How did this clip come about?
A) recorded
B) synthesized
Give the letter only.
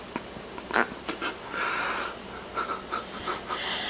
A